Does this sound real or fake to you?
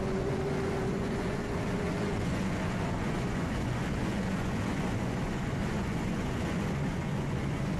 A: fake